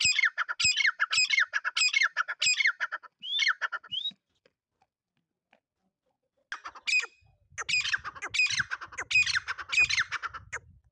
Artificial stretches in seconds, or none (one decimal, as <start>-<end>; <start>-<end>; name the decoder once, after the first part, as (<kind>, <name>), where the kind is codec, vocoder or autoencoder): none